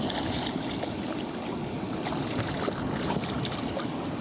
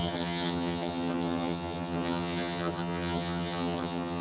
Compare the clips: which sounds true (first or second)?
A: first